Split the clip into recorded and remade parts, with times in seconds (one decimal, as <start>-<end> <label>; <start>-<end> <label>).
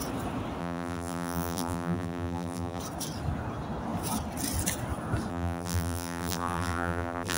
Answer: 0.0-0.6 recorded; 0.6-2.8 remade; 2.8-5.3 recorded; 5.3-7.4 remade